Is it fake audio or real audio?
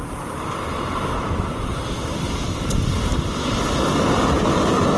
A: real